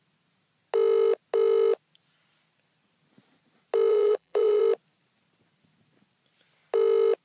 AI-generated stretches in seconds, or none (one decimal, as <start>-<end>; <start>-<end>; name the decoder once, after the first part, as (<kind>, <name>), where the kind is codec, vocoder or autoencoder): 3.9-4.6 (vocoder, BigVGAN v2)